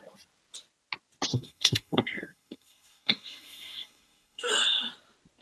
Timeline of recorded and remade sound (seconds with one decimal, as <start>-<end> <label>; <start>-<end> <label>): 0.0-1.3 recorded; 1.3-4.5 remade; 4.5-5.4 recorded